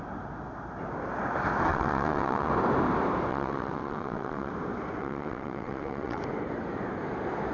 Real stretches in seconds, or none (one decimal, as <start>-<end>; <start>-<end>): 0.0-1.7; 2.5-3.3; 4.5-5.0; 6.2-7.5